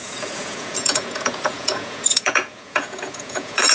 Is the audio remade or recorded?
remade